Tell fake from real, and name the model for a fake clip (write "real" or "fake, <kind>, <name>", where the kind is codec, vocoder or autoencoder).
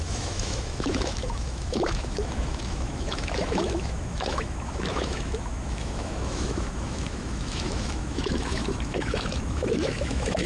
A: fake, autoencoder, DAC-VAE